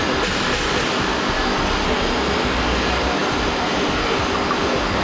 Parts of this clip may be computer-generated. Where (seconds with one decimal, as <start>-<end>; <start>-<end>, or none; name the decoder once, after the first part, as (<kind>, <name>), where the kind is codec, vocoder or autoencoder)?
none